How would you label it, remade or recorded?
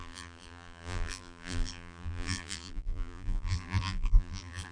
remade